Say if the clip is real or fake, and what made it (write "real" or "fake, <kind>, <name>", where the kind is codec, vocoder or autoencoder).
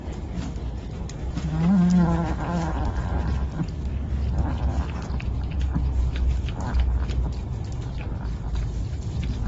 real